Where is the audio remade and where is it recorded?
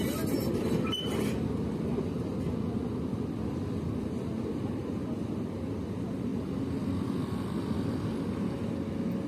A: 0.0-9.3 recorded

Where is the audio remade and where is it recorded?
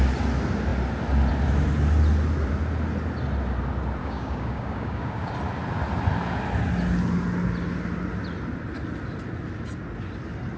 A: 0.0-4.0 recorded; 4.0-5.3 remade; 5.3-10.6 recorded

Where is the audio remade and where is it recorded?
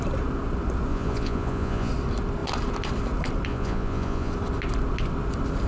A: 0.0-0.9 recorded; 0.9-1.9 remade; 1.9-3.5 recorded; 3.5-4.3 remade; 4.3-5.7 recorded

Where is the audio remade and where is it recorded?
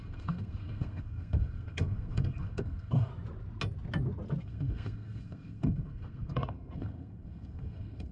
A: 0.0-3.1 remade; 3.1-4.4 recorded; 4.4-8.1 remade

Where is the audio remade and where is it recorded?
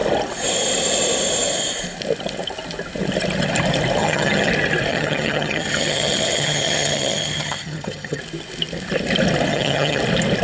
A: 0.0-4.0 recorded; 4.0-4.5 remade; 4.5-4.9 recorded; 4.9-8.2 remade; 8.2-9.5 recorded; 9.5-10.0 remade; 10.0-10.4 recorded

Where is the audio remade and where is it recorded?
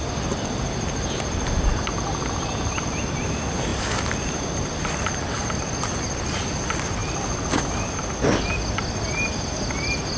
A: 0.0-3.7 recorded; 3.7-4.9 remade; 4.9-7.0 recorded; 7.0-8.0 remade; 8.0-10.2 recorded